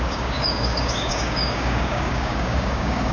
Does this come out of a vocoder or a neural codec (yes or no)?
yes